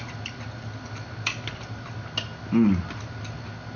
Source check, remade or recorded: recorded